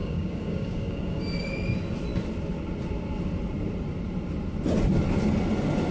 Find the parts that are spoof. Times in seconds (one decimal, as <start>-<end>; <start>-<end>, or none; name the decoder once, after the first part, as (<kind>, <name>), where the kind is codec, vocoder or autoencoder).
0.0-1.2 (codec, DAC)